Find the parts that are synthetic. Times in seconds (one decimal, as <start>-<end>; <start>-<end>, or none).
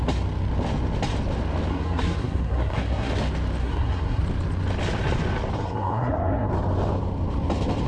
1.7-3.1; 3.6-4.2; 5.6-6.5